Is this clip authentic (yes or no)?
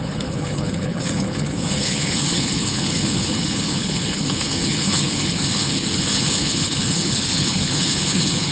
no